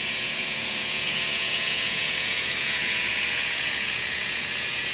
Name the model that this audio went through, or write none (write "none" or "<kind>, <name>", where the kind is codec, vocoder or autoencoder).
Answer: vocoder, Vocos